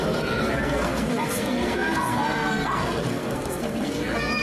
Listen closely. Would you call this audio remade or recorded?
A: remade